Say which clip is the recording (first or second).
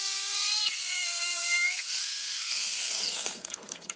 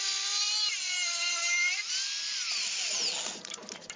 second